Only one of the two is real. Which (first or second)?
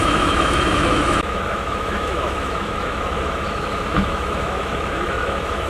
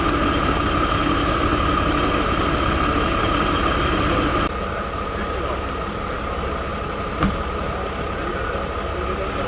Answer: second